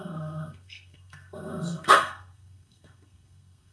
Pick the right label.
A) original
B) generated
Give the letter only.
B